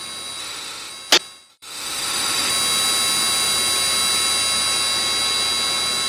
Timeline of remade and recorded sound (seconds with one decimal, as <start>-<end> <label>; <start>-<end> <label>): 0.0-0.4 recorded; 0.4-0.9 remade; 0.9-1.5 recorded; 1.5-2.5 remade; 2.5-6.1 recorded